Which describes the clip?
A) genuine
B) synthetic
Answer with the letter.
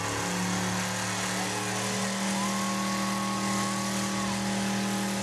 A